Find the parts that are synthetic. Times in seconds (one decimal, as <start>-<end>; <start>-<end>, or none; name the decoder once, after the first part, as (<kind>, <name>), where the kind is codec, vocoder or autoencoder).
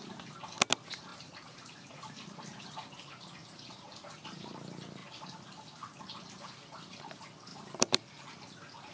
none